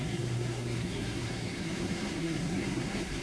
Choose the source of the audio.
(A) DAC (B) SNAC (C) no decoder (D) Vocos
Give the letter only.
B